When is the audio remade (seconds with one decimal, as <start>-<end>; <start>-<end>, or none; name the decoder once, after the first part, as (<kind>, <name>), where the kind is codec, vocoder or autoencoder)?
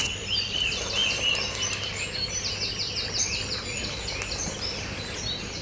none